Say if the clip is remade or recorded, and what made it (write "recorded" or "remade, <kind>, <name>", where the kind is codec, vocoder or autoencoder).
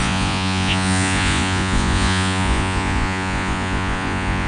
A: remade, vocoder, Vocos